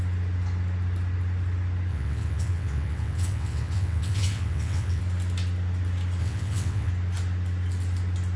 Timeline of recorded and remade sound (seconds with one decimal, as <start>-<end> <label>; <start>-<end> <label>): 0.0-1.9 recorded; 1.9-5.0 remade; 5.0-6.2 recorded; 6.2-6.9 remade; 6.9-8.4 recorded